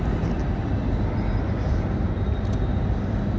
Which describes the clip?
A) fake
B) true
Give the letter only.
B